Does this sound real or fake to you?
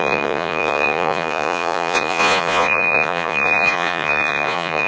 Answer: fake